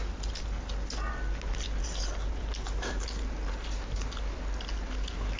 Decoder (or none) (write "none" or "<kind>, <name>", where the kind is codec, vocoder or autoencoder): none